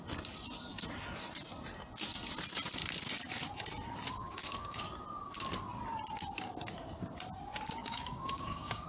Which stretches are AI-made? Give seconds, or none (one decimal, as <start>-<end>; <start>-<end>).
4.2-4.8; 7.8-8.9